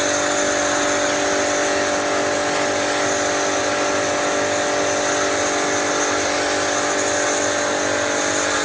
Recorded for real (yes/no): yes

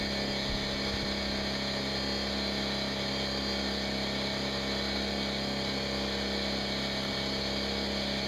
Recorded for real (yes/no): yes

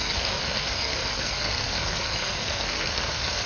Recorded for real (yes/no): no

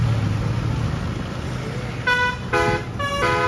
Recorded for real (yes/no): yes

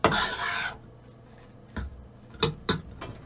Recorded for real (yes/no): yes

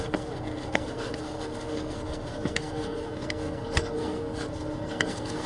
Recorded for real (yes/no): no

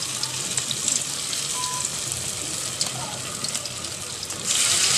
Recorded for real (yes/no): yes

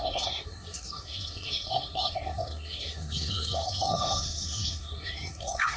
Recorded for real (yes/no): no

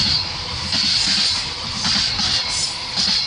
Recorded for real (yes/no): yes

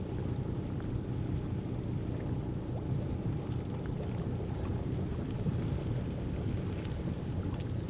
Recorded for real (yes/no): yes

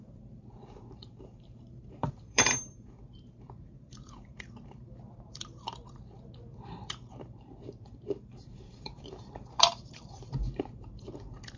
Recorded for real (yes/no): no